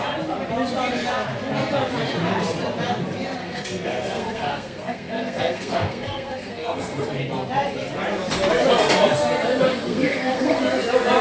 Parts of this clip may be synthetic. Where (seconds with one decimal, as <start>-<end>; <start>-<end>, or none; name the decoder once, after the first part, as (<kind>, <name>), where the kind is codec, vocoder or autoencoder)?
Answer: 3.4-7.1 (codec, SNAC); 9.9-10.6